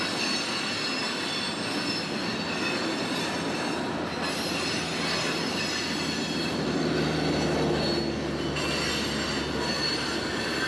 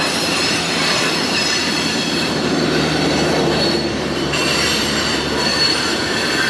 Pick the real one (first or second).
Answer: first